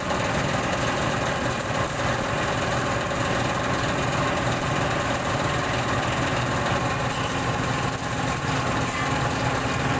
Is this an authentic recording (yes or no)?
yes